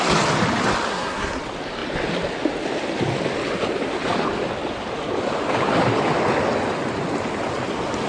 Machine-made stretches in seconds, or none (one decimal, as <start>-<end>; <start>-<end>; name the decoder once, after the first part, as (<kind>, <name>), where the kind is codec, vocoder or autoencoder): 0.9-1.4 (codec, SNAC)